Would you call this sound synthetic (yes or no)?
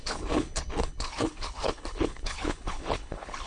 yes